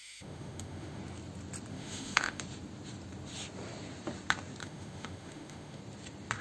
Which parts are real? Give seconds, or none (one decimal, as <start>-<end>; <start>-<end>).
1.0-1.7; 2.4-4.6; 5.8-6.4